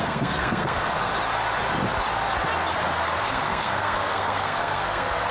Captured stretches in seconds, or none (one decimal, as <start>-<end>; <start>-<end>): 1.1-3.2